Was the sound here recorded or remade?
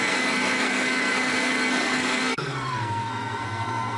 remade